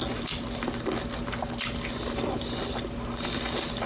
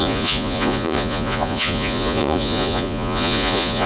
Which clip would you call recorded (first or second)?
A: first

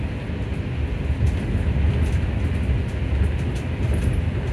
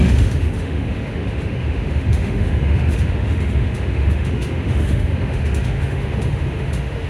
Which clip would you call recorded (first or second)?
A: first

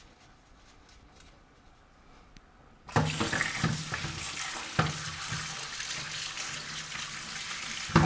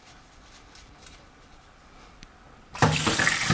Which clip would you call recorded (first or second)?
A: first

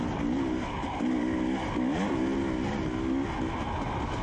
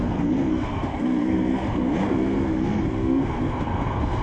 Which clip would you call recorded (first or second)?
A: first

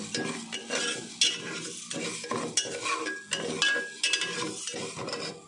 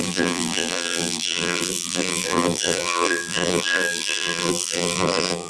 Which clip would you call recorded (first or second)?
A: first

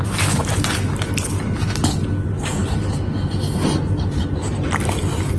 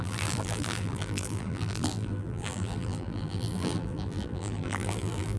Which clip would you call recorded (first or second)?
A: first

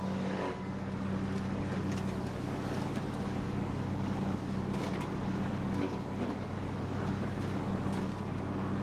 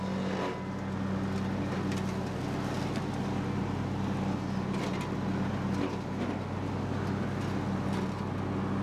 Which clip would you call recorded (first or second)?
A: second